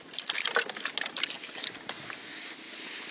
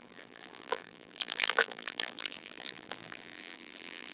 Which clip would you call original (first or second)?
first